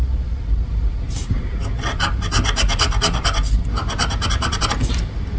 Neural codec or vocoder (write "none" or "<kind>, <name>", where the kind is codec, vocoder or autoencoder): none